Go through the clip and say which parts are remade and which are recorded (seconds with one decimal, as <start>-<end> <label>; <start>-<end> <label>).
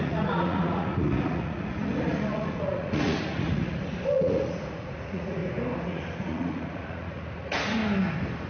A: 0.0-5.4 remade; 5.4-5.9 recorded; 5.9-7.8 remade; 7.8-8.5 recorded